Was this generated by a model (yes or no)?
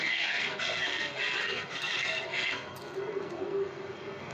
yes